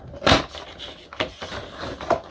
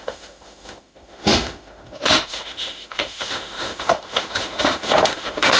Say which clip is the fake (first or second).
second